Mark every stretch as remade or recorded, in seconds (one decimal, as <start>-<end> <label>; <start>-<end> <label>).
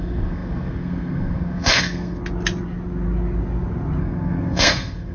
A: 0.0-2.2 remade; 2.2-4.0 recorded; 4.0-5.1 remade